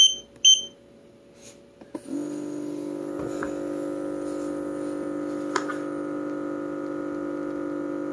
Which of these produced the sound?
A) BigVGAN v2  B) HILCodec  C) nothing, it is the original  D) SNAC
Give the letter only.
C